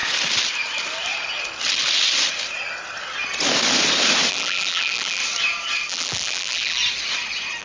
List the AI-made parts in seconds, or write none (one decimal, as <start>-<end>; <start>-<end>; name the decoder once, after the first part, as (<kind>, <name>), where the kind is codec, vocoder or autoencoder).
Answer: 4.3-5.2 (vocoder, BigVGAN v2); 5.9-6.8